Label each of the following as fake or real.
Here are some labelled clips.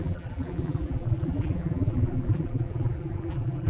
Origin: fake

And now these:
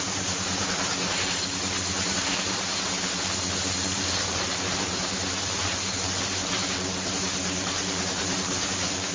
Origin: fake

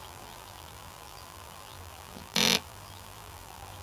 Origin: fake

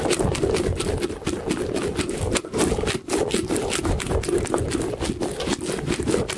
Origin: real